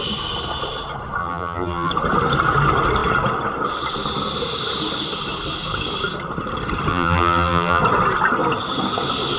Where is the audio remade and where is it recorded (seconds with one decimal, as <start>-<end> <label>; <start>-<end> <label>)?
0.0-1.2 recorded; 1.2-1.9 remade; 1.9-6.9 recorded; 6.9-7.8 remade; 7.8-9.4 recorded